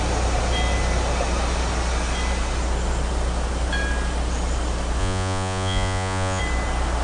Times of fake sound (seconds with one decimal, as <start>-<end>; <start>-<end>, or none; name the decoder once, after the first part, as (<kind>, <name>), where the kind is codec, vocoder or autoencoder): 5.0-6.4 (vocoder, Vocos)